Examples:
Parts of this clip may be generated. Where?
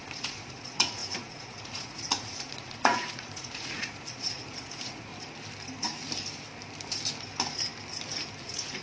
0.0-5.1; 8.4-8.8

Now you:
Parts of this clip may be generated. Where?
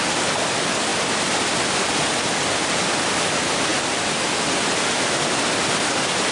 none